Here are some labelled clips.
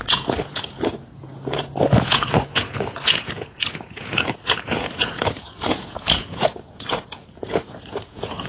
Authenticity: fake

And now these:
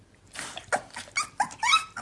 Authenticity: real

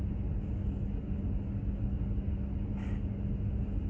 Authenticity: real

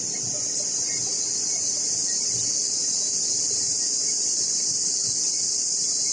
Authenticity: real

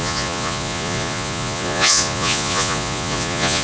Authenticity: fake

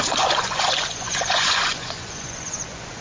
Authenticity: fake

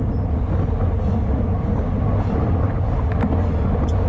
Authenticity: real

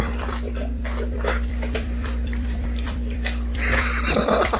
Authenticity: fake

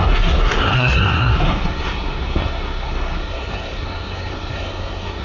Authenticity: fake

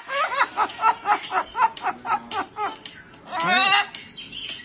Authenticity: real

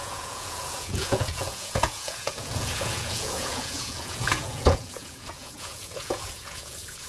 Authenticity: fake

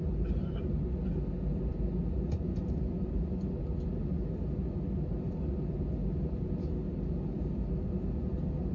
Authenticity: real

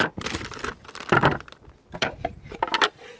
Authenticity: real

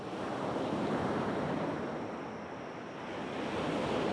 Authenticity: real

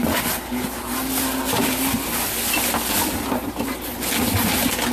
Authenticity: real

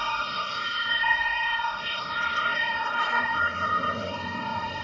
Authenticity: fake